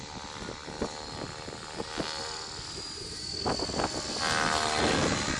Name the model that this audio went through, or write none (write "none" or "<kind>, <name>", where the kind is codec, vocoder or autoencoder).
none